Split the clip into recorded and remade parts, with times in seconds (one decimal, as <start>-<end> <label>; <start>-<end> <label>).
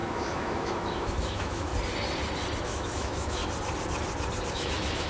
0.0-1.7 remade; 1.7-2.6 recorded; 2.6-3.4 remade; 3.4-4.5 recorded; 4.5-5.1 remade